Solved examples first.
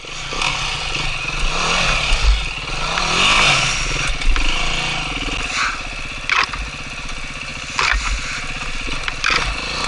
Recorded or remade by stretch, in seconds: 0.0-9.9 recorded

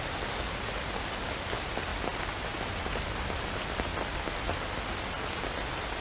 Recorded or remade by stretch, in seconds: 0.0-6.0 recorded

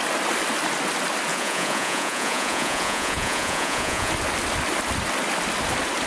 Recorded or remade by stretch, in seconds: 0.0-1.3 recorded; 1.3-4.1 remade; 4.1-6.1 recorded

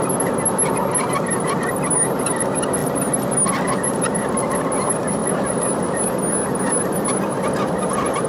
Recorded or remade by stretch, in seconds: 0.0-8.3 recorded